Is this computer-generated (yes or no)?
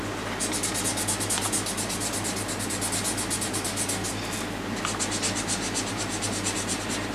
no